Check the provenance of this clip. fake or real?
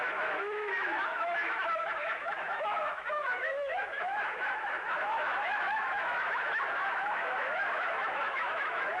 fake